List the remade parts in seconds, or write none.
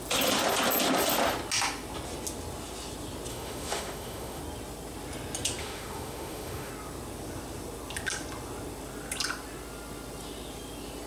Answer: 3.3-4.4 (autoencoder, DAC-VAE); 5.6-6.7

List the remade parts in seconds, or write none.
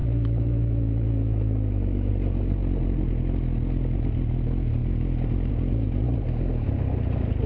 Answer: 0.0-2.1 (autoencoder, DAC-VAE)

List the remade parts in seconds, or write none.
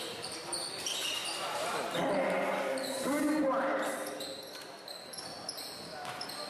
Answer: none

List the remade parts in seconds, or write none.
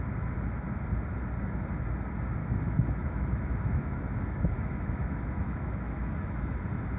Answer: 2.4-6.6 (autoencoder, DAC-VAE)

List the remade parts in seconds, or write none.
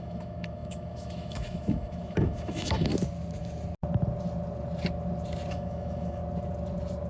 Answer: 0.0-2.9 (autoencoder, DAC-VAE); 5.5-6.2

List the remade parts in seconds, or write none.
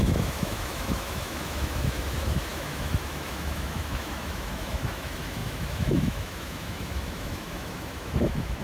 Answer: 0.0-8.6 (autoencoder, DAC-VAE)